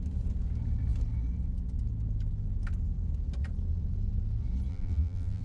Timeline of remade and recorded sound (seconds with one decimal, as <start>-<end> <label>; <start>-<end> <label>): 0.0-4.7 recorded; 4.7-5.4 remade